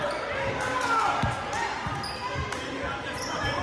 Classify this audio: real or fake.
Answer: real